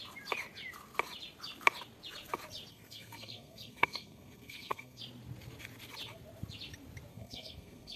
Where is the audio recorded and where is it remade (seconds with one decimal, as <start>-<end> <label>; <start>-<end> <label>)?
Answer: 0.0-2.7 recorded; 2.7-5.0 remade; 5.0-7.1 recorded; 7.1-8.0 remade